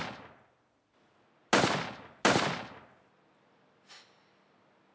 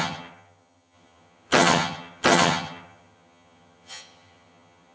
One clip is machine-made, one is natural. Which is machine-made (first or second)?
second